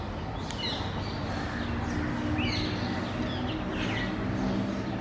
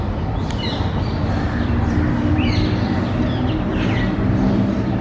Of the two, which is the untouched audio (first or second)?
first